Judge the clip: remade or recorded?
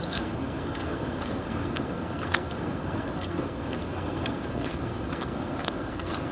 remade